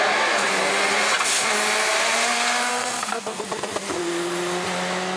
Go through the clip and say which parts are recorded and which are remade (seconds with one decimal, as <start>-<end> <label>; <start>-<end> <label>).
0.0-2.7 recorded; 2.7-3.4 remade; 3.4-5.2 recorded